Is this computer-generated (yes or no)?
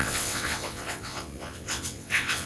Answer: yes